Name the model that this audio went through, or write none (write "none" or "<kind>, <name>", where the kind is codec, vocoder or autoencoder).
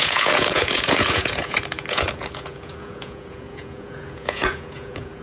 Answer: vocoder, Vocos